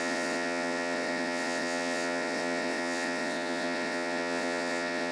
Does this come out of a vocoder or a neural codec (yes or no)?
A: yes